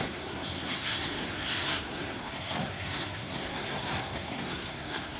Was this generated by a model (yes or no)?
yes